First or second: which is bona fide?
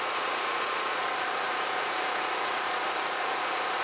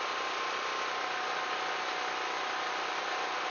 second